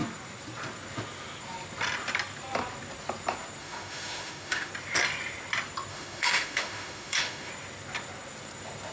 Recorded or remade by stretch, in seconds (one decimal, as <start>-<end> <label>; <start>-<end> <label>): 0.0-3.6 recorded; 3.6-4.7 remade; 4.7-5.9 recorded; 5.9-7.5 remade; 7.5-8.9 recorded